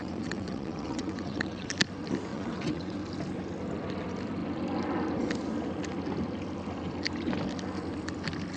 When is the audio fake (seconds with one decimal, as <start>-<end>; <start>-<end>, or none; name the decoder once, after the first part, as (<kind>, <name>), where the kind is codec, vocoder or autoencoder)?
0.0-1.7 (vocoder, WaveNeXt); 2.3-3.0